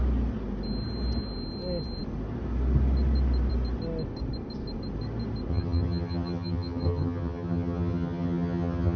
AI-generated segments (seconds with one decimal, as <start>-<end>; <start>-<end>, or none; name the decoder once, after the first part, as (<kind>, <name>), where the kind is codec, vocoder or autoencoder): 5.5-9.0 (vocoder, HiFi-GAN)